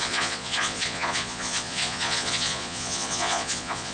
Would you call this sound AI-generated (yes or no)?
yes